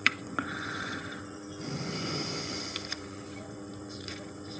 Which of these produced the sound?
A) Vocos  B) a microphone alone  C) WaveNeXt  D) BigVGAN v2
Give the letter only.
A